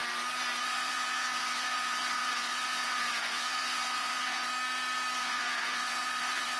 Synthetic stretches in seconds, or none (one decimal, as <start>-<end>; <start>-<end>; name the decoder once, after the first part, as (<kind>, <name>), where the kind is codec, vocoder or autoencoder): 0.6-4.5 (vocoder, Vocos); 5.2-6.6